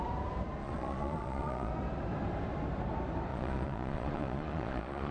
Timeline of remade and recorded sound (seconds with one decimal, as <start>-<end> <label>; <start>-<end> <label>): 0.0-0.6 recorded; 0.6-1.7 remade; 1.7-3.3 recorded; 3.3-5.1 remade